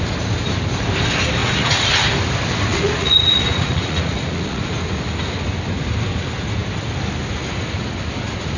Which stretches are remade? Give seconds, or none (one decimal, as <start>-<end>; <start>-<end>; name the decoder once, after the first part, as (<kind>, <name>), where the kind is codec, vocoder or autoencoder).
1.4-1.9 (vocoder, Vocos); 2.7-4.7